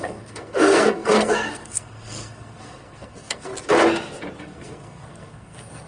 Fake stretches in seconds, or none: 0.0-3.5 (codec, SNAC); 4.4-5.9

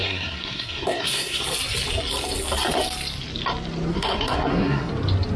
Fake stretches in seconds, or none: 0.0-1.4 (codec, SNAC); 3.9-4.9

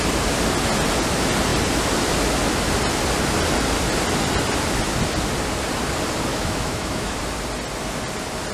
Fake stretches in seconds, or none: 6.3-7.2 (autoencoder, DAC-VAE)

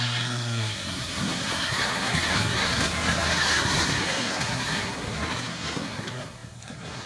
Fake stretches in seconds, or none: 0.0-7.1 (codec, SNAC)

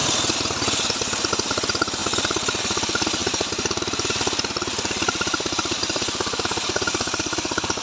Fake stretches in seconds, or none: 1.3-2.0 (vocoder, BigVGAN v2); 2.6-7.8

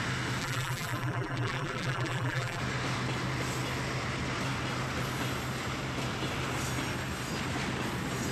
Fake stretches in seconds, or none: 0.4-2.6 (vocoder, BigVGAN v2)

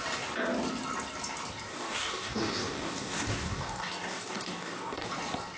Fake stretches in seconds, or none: 1.7-5.1 (codec, DAC)